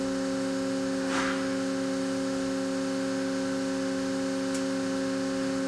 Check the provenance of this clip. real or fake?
real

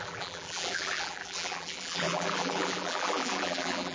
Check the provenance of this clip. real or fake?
fake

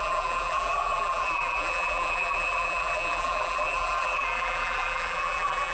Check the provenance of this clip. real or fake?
fake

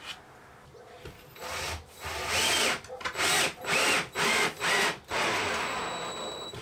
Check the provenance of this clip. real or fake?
real